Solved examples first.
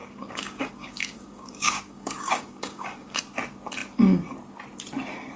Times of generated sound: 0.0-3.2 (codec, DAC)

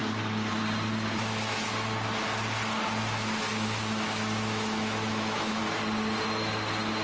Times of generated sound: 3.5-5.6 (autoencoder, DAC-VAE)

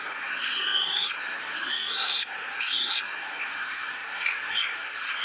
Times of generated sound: 0.0-5.2 (codec, SNAC)

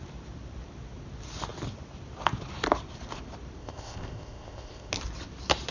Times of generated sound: 3.6-4.9 (codec, ZipCodec)

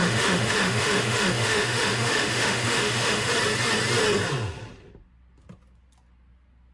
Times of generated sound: 0.0-3.3 (autoencoder, DAC-VAE)

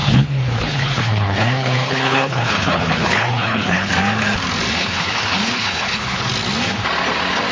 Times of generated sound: 0.0-3.9 (codec, HILCodec); 4.8-6.2

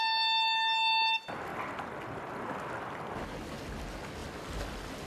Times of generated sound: none